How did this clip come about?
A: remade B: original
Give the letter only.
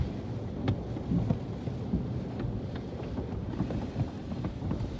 B